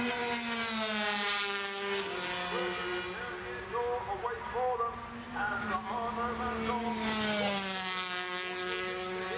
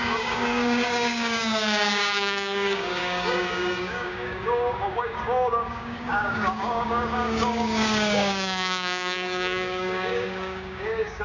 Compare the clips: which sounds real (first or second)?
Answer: first